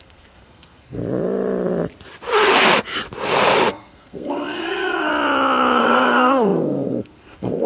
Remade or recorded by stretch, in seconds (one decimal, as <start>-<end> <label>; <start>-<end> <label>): 0.0-1.0 remade; 1.0-3.7 recorded; 3.7-5.1 remade; 5.1-5.8 recorded; 5.8-7.7 remade